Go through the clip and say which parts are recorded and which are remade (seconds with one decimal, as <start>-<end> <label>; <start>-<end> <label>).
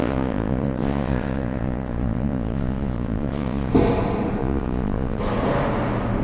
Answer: 0.0-3.7 remade; 3.7-4.4 recorded; 4.4-5.2 remade; 5.2-6.2 recorded